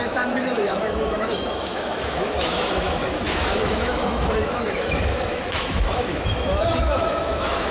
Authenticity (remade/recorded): remade